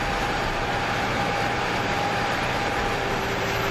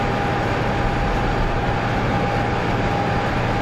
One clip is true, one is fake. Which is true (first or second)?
second